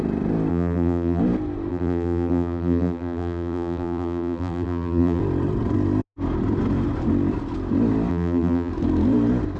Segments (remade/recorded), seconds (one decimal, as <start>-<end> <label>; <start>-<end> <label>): 0.0-0.5 recorded; 0.5-1.2 remade; 1.2-1.7 recorded; 1.7-5.2 remade; 5.2-8.1 recorded; 8.1-8.7 remade; 8.7-9.6 recorded